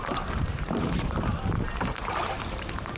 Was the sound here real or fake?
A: fake